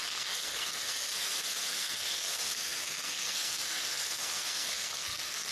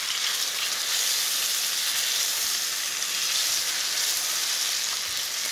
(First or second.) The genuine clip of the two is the second